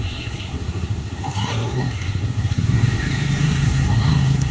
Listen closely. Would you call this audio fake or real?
fake